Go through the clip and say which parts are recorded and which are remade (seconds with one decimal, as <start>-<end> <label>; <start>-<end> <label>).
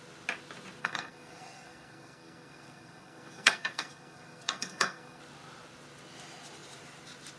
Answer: 0.0-0.8 recorded; 0.8-5.2 remade; 5.2-7.4 recorded